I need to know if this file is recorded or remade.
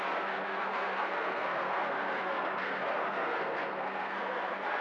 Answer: remade